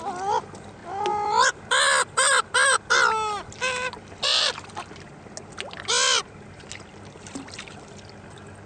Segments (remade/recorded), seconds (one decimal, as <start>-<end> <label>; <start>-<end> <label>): 0.0-8.7 recorded